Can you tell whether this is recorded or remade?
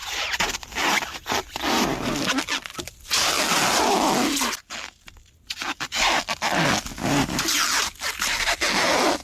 recorded